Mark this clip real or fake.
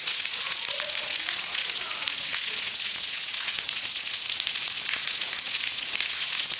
fake